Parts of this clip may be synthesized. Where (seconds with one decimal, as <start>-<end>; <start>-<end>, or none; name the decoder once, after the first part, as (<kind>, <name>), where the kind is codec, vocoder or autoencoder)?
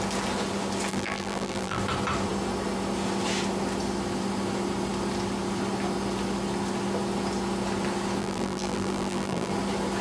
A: 0.9-1.8 (vocoder, BigVGAN v2); 8.2-9.5